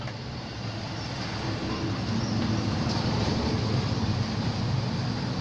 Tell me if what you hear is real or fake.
real